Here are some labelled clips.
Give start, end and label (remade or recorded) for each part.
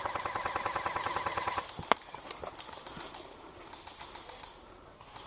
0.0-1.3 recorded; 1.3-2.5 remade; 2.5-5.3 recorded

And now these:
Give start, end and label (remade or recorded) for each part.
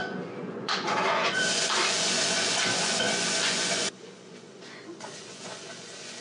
0.0-6.2 remade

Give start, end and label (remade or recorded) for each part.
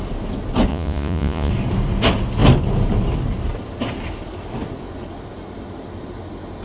0.0-0.7 recorded; 0.7-1.5 remade; 1.5-6.6 recorded